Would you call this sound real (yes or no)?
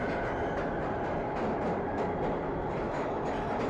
yes